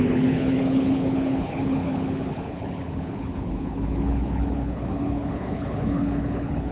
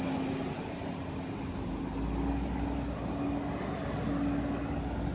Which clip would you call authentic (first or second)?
second